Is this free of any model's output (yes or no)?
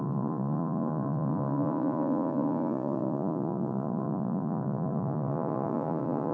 no